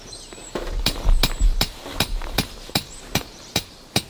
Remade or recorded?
remade